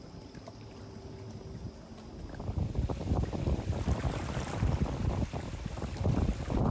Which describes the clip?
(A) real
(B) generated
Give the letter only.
A